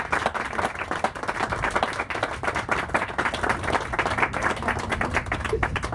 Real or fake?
real